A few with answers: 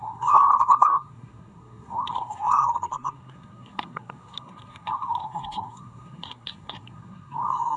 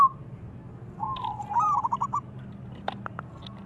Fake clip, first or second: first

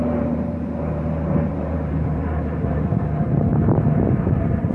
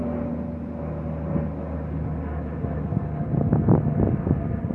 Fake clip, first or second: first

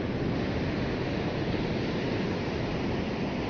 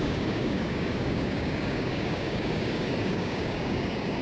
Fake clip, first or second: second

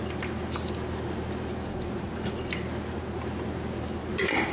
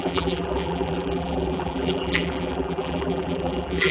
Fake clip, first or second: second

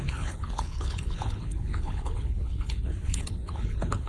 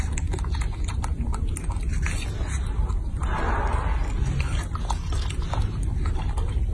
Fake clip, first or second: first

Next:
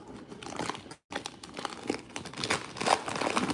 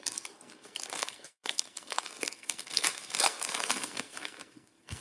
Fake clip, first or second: second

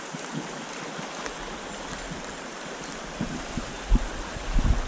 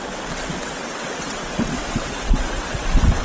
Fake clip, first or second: second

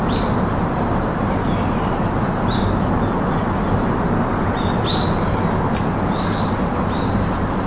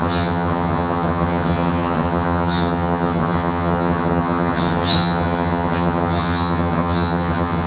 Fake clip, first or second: second